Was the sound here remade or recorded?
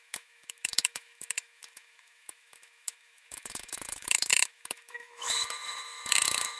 remade